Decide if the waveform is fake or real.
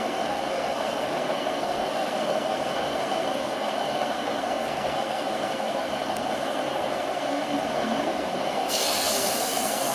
fake